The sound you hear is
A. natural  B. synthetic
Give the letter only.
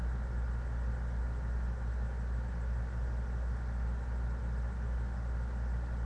A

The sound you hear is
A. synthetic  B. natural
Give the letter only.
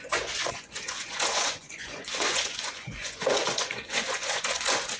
A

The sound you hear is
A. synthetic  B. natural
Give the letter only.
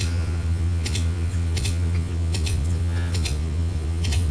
A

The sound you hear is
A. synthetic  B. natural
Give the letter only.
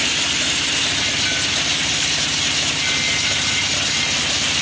B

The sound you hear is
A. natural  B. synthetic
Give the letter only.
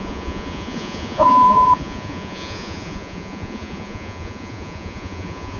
B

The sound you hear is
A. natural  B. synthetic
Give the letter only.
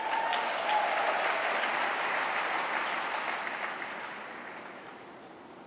A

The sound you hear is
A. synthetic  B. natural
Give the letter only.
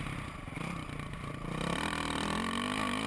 B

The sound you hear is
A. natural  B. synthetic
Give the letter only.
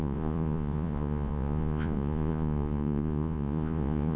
B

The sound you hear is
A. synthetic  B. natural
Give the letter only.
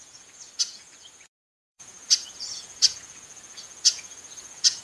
A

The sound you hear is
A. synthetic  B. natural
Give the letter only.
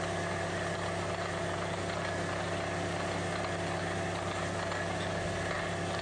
B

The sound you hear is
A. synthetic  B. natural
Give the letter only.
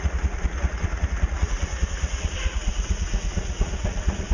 A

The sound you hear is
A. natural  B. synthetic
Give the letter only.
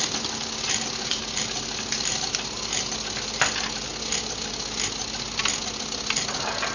A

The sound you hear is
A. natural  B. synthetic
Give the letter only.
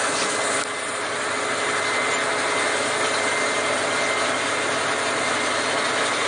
A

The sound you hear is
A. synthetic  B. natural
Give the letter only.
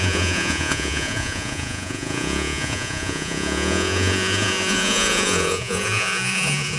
A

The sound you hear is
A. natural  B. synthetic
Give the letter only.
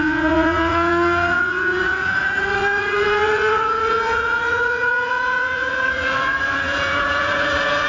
B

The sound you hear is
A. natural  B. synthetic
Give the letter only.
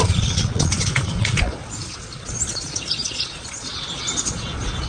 B